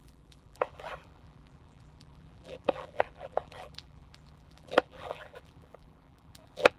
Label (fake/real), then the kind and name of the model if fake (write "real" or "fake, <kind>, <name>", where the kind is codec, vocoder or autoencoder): fake, vocoder, BigVGAN v2